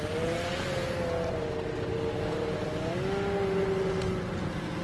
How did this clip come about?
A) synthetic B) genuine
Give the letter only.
B